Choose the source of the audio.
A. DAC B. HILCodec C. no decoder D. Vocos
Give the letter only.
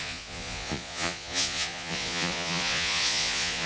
D